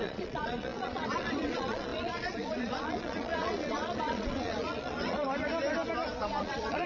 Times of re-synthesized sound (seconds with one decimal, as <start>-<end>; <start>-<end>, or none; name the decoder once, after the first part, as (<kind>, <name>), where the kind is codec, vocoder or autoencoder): 0.0-5.5 (vocoder, Vocos); 6.4-6.9